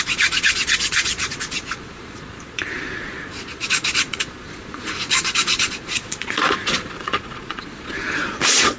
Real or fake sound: fake